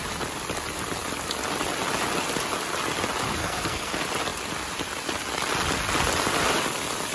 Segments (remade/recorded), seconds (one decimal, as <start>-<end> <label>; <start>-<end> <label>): 0.0-3.4 recorded; 3.4-3.9 remade; 3.9-7.1 recorded